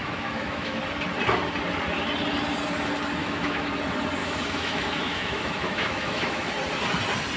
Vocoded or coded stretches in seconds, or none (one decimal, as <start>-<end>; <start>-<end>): 0.0-0.8; 3.2-3.7; 4.2-6.5